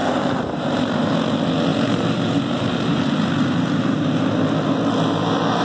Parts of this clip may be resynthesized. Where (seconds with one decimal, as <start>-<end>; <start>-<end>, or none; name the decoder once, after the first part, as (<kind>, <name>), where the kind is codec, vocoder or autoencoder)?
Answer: 0.0-1.1 (vocoder, BigVGAN v2); 1.7-4.3